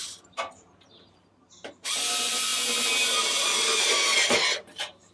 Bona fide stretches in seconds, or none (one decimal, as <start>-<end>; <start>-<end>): none